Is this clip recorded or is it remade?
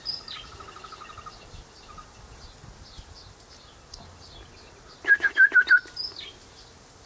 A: recorded